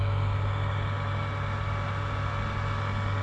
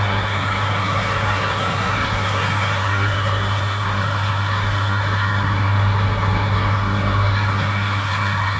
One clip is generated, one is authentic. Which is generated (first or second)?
second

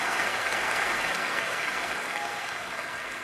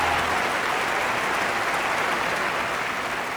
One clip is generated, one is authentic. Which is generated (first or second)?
first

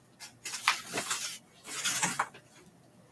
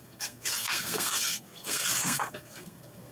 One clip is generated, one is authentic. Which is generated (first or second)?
second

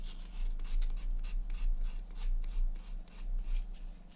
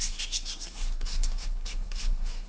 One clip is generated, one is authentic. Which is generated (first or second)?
second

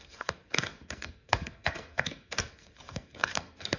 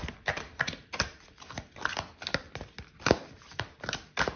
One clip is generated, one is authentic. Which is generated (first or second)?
first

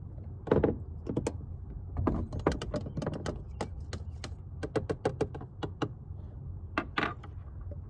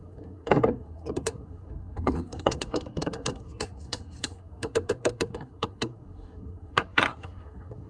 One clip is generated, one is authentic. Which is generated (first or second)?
second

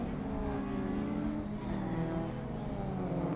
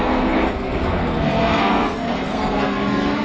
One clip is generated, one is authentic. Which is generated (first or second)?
second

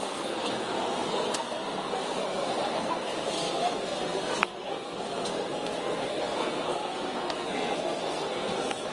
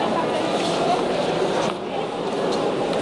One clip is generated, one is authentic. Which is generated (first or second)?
first